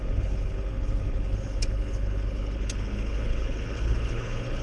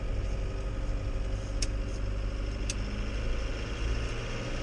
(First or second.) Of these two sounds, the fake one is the first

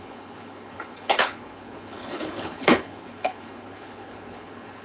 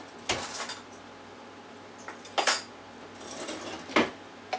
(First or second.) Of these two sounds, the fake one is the first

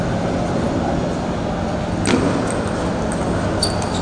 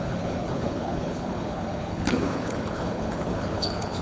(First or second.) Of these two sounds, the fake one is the second